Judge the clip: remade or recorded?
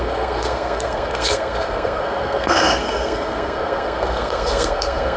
remade